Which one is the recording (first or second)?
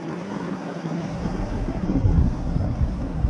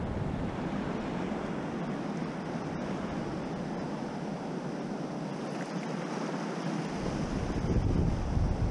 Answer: second